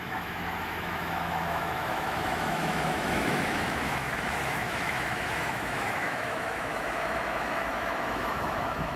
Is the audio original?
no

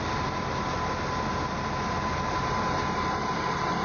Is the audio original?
yes